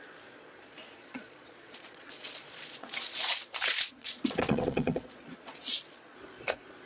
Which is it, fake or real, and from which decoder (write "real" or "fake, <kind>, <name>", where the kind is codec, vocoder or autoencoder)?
fake, vocoder, Vocos